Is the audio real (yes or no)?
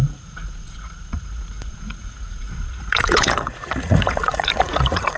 no